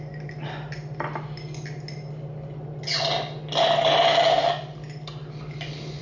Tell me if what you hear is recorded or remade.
recorded